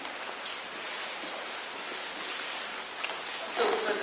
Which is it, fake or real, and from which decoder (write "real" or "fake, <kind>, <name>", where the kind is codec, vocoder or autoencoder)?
real